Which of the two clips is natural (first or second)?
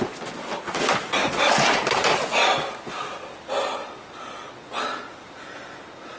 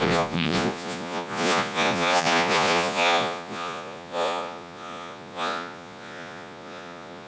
first